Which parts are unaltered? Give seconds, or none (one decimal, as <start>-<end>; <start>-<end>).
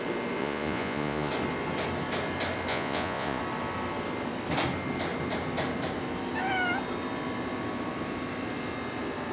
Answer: 0.0-0.4; 1.3-2.7; 3.4-9.3